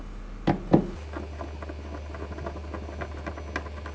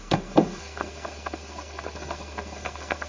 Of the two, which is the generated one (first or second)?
second